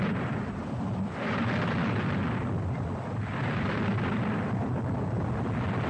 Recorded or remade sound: remade